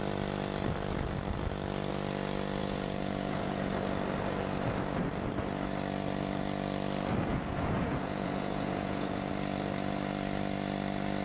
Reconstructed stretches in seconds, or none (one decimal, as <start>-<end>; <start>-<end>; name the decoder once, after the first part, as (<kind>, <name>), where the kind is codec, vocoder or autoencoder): 2.6-3.7 (vocoder, Vocos); 7.3-9.3

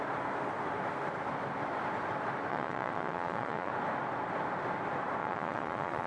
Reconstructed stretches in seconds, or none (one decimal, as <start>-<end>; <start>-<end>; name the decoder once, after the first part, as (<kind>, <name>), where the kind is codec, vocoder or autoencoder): 2.5-3.7 (vocoder, Vocos); 5.2-6.1

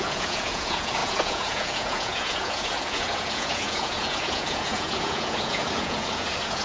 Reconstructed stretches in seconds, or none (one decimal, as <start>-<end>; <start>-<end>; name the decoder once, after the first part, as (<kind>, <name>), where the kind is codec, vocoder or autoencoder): 0.0-6.6 (vocoder, Vocos)

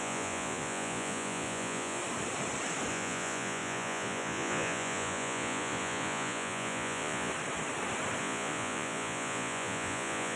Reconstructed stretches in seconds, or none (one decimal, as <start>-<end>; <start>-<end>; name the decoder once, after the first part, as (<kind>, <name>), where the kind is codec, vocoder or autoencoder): 0.0-2.0 (vocoder, Vocos); 2.9-7.3; 8.2-10.4